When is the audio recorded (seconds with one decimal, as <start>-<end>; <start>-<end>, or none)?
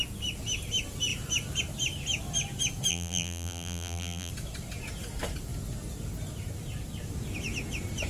0.0-2.9; 4.3-8.1